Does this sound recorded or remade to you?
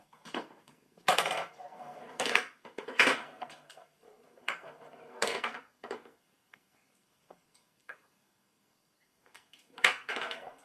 remade